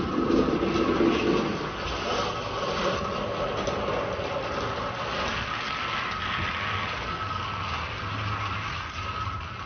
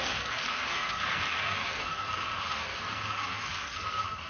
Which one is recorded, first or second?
first